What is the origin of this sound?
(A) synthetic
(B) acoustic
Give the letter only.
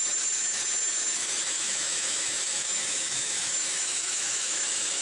A